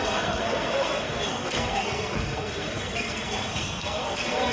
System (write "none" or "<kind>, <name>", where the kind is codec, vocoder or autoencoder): codec, SNAC